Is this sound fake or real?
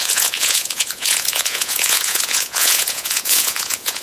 fake